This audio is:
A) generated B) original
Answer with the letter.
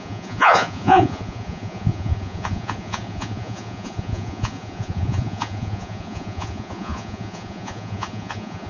A